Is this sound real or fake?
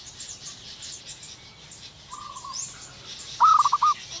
real